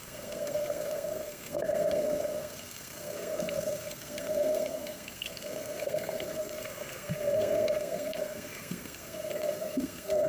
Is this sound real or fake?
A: fake